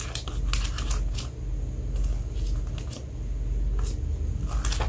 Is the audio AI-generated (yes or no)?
no